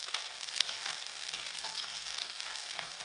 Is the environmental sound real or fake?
fake